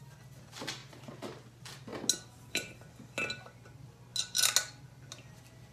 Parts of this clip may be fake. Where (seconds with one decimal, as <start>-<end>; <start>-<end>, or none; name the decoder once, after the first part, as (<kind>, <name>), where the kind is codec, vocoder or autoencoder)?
none